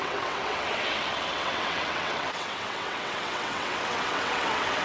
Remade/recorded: remade